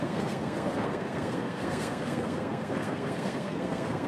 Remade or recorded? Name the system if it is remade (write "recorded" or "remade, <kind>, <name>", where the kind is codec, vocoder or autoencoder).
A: remade, codec, SNAC